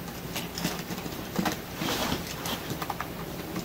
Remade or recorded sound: remade